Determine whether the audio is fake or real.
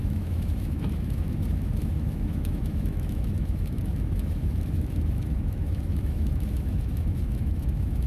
fake